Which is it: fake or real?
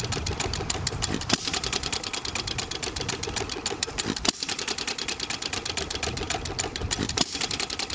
fake